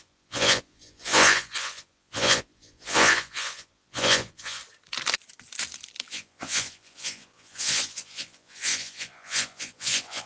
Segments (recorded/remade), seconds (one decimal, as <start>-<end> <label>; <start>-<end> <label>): 0.0-4.6 remade; 4.6-6.1 recorded; 6.1-10.3 remade